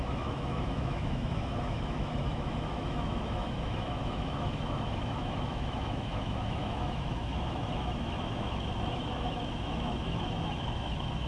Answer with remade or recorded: remade